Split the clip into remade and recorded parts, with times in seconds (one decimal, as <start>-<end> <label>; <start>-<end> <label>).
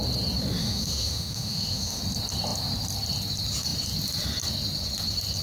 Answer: 0.0-0.6 recorded; 0.6-2.0 remade; 2.0-5.4 recorded